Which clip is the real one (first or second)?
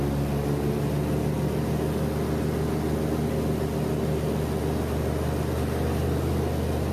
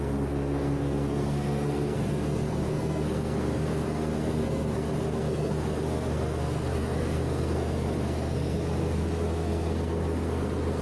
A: first